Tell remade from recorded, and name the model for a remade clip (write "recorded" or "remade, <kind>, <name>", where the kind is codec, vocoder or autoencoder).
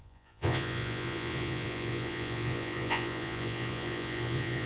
remade, vocoder, Vocos